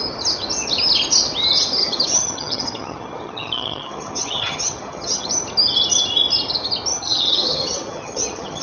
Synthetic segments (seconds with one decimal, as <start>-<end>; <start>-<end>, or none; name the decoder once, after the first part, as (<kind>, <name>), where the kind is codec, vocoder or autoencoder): 1.8-5.3 (vocoder, HiFi-GAN); 6.9-8.6